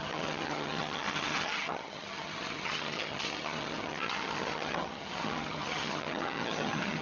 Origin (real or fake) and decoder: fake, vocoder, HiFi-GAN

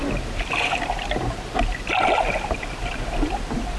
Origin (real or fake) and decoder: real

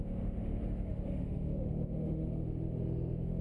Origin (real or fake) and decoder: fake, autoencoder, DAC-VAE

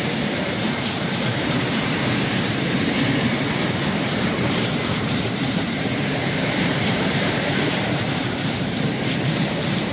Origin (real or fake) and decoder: fake, vocoder, BigVGAN v2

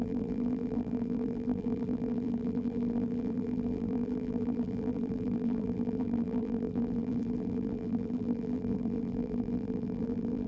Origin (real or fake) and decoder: fake, vocoder, BigVGAN v2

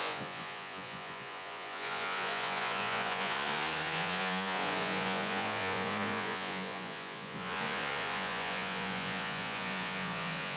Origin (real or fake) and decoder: fake, vocoder, Vocos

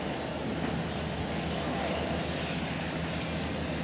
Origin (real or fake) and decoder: real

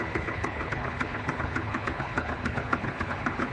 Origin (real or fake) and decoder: fake, codec, HILCodec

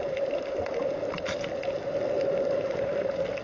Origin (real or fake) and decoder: real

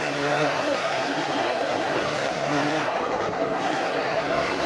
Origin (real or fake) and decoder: fake, codec, SNAC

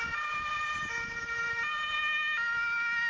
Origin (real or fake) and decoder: real